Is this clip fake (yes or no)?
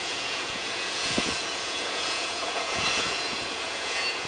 yes